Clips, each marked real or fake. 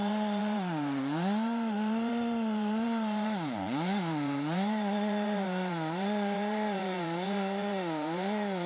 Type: fake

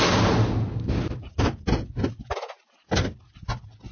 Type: real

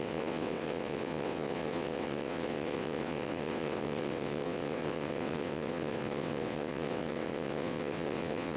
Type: fake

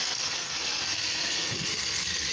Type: fake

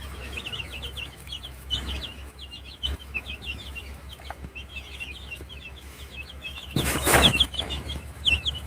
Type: fake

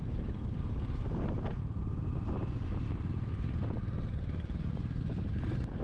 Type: real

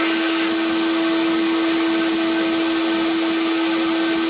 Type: real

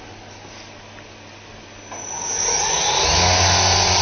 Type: real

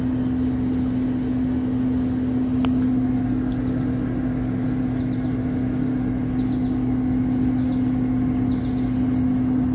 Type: real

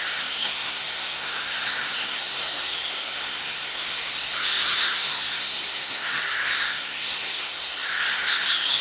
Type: fake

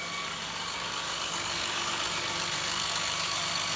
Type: fake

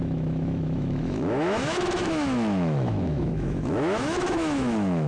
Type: fake